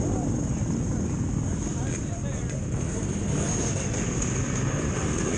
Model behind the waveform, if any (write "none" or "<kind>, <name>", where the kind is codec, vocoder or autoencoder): vocoder, BigVGAN v2